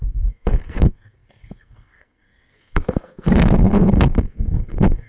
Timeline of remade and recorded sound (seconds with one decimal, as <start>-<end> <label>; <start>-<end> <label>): 0.0-5.1 remade